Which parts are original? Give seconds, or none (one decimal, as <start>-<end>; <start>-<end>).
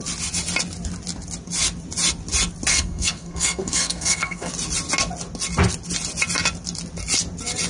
0.0-2.7; 4.5-7.7